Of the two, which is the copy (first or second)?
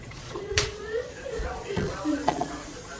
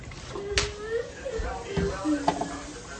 first